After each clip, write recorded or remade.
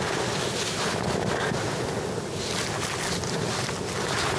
recorded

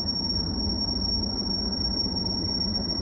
remade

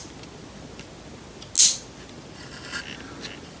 recorded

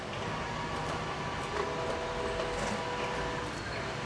recorded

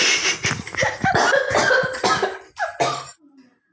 recorded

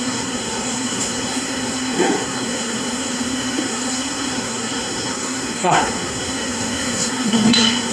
remade